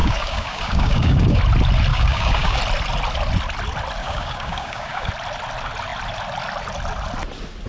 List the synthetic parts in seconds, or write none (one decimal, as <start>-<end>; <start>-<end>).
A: 0.0-1.4; 1.9-2.6; 4.0-5.1